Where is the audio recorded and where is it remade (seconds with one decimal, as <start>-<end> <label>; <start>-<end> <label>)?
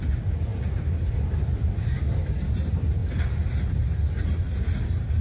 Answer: 0.0-5.2 recorded